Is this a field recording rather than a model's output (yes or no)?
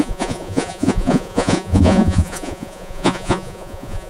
no